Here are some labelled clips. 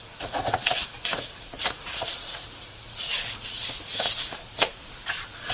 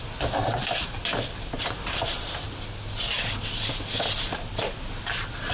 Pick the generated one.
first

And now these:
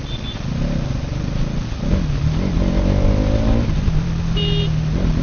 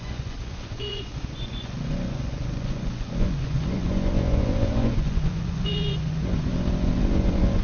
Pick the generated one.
second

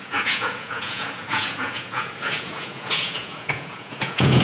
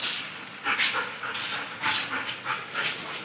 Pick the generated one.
first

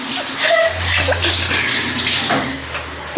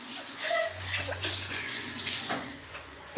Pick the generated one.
second